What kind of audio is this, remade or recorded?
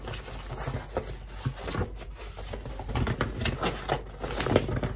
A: recorded